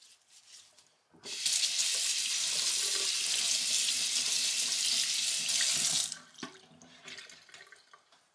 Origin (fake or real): real